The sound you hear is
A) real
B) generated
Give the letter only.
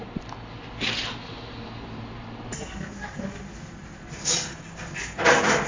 A